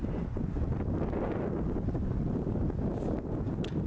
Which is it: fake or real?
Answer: real